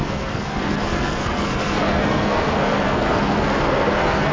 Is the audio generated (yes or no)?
yes